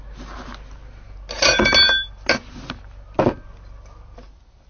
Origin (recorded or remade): recorded